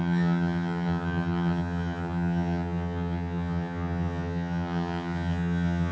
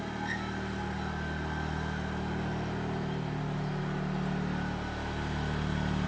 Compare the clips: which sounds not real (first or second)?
first